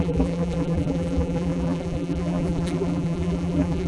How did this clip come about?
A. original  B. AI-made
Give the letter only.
B